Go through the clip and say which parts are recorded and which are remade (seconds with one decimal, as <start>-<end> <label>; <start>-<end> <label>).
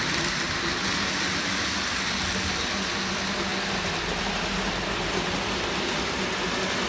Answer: 0.0-6.9 recorded